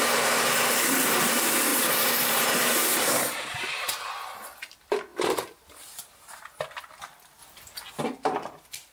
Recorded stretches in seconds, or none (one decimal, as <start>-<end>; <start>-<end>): 0.0-1.7; 3.3-5.1; 6.9-8.9